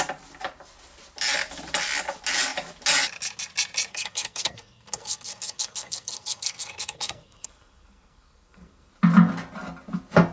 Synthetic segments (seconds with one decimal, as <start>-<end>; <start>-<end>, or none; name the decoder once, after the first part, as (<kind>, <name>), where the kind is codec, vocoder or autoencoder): 3.9-8.9 (codec, SNAC)